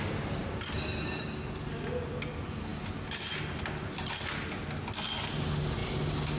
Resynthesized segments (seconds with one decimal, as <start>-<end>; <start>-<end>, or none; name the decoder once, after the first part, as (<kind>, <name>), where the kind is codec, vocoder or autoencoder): none